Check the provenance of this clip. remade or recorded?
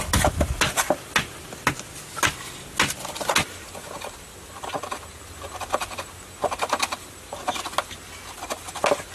recorded